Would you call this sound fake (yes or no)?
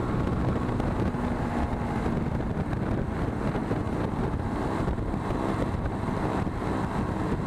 no